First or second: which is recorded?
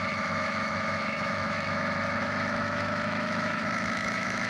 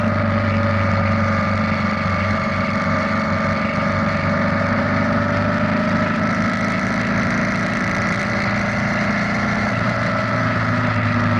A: second